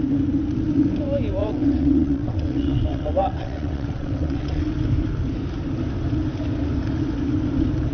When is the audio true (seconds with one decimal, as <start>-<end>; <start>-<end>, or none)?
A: 0.0-1.4; 4.6-7.9